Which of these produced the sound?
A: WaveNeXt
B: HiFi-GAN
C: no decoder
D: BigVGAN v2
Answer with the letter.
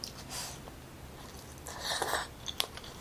C